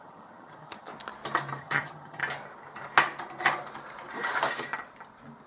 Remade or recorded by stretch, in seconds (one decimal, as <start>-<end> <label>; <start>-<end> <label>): 0.0-0.9 remade; 0.9-1.6 recorded; 1.6-2.2 remade; 2.2-5.5 recorded